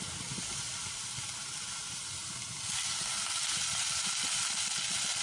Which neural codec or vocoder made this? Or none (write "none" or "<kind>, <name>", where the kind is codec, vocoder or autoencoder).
none